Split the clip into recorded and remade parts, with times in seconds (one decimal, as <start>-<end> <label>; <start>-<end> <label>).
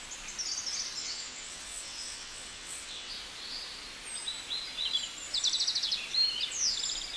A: 0.0-1.0 recorded; 1.0-3.1 remade; 3.1-7.2 recorded